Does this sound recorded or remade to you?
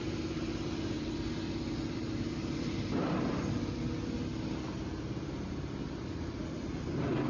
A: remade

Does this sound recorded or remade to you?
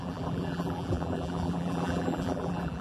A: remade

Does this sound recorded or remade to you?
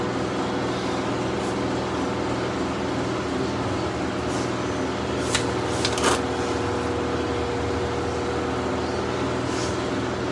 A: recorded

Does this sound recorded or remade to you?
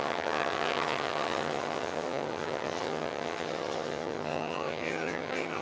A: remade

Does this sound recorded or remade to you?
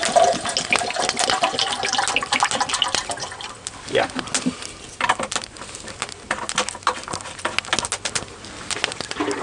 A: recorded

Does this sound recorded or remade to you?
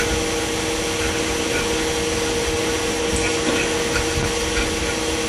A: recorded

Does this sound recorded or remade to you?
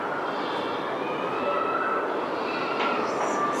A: recorded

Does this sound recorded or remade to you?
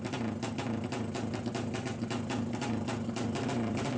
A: recorded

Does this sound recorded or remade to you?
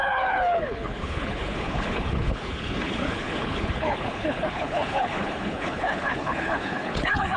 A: remade